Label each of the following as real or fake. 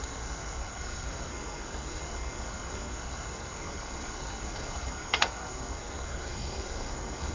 fake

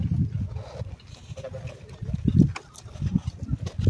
real